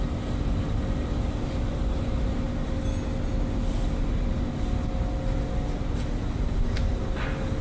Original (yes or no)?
yes